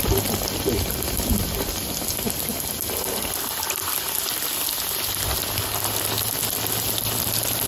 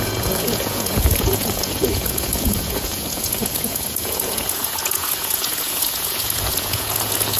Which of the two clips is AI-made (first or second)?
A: second